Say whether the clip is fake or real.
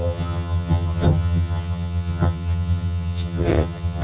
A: fake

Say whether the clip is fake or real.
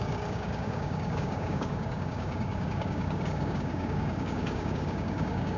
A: fake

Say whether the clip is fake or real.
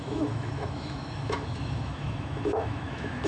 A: fake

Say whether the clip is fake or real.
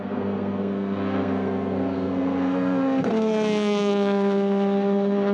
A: fake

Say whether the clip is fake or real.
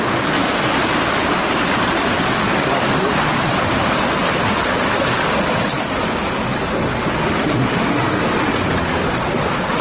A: real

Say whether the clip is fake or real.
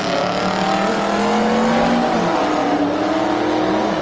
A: real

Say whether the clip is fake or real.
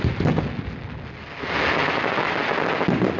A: real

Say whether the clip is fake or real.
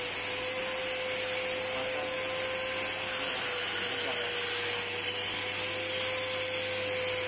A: real